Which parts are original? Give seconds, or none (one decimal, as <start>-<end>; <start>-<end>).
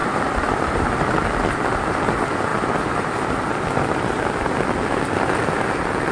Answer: 0.9-6.1